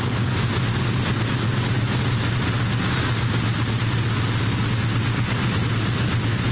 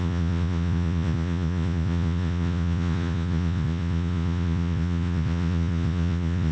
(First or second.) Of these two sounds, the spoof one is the second